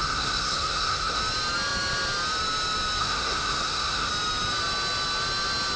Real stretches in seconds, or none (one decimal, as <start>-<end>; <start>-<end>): 1.2-3.0; 4.1-5.8